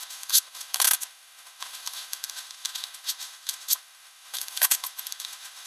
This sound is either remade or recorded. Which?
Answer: remade